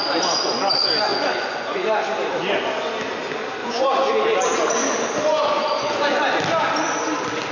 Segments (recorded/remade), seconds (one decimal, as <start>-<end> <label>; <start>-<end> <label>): 0.0-1.1 recorded; 1.1-2.0 remade; 2.0-3.6 recorded; 3.6-4.1 remade; 4.1-5.3 recorded; 5.3-6.2 remade; 6.2-7.5 recorded